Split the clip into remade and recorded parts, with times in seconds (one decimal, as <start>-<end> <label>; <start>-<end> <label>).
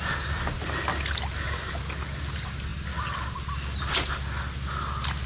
0.0-5.3 recorded